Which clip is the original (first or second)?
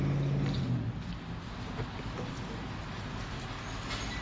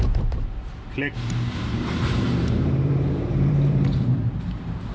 first